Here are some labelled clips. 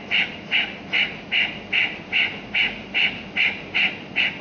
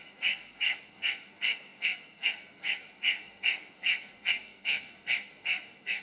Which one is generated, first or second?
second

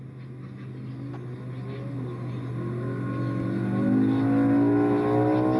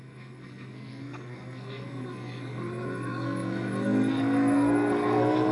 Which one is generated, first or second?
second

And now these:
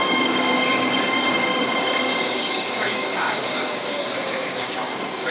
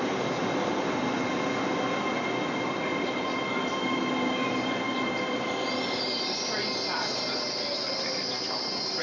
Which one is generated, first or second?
first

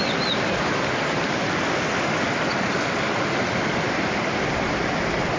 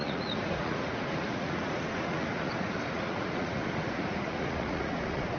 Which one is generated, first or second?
second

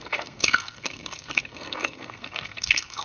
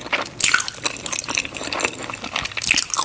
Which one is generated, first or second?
first